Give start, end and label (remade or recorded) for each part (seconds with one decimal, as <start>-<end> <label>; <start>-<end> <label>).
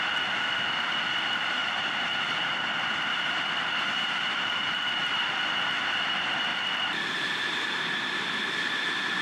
0.0-1.6 recorded; 1.6-5.1 remade; 5.1-6.5 recorded; 6.5-8.4 remade; 8.4-9.2 recorded